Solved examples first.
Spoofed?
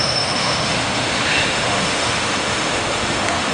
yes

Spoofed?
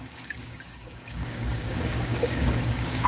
yes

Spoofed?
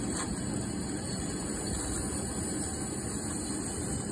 no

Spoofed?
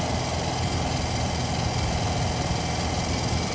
no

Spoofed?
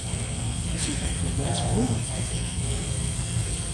yes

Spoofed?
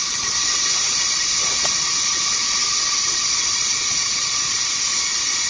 yes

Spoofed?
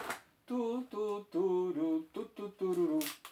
no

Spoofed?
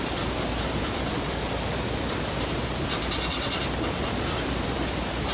yes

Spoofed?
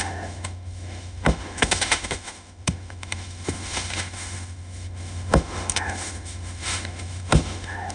yes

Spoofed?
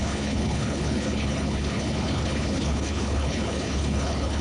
yes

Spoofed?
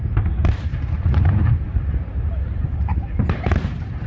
yes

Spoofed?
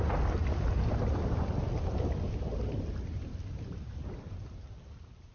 no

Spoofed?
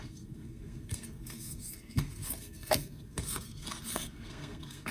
yes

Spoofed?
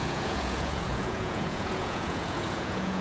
yes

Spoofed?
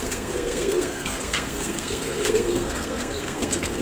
yes